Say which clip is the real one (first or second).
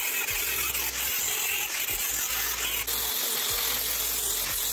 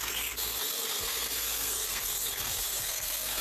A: first